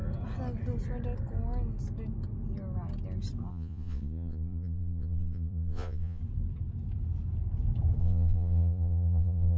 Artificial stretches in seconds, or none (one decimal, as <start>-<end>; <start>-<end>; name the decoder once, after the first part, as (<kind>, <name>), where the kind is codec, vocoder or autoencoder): 3.5-6.2 (vocoder, Vocos); 8.0-9.6